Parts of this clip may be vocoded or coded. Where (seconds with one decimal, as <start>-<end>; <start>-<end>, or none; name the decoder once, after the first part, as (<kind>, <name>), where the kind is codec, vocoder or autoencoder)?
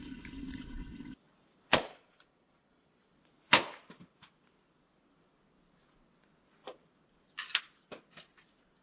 1.7-3.2 (vocoder, Vocos)